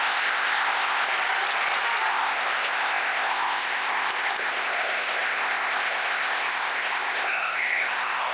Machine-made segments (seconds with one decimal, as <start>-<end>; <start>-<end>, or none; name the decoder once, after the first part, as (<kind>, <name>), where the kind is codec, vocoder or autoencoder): 0.0-1.1 (codec, ZipCodec); 2.1-8.3